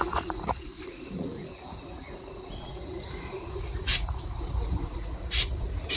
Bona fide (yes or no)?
no